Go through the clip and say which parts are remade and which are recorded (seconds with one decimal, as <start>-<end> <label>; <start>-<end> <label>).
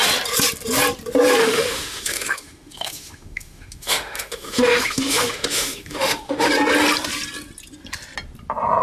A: 0.0-1.4 recorded; 1.4-6.5 remade; 6.5-8.8 recorded